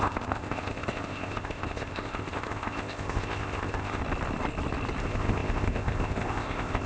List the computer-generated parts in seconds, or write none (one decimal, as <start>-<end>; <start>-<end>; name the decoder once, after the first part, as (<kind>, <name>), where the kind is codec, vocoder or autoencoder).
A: 0.0-4.0 (codec, ZipCodec); 5.0-6.9